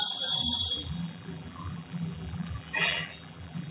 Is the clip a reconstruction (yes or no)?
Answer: yes